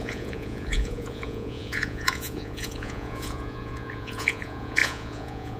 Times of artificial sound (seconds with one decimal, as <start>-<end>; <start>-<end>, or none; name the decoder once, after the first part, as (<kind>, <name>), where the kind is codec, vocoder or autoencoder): 0.0-5.6 (vocoder, Vocos)